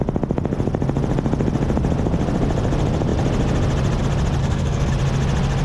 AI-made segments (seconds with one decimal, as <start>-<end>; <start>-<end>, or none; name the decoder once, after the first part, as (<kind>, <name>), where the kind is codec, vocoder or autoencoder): 4.4-4.9 (codec, SNAC)